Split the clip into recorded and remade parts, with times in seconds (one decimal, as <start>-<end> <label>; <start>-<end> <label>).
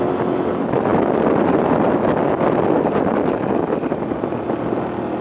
0.0-5.2 recorded